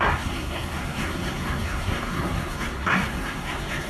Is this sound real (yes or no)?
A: no